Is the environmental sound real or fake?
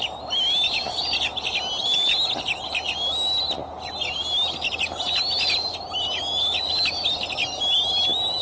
real